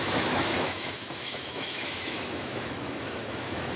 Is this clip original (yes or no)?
no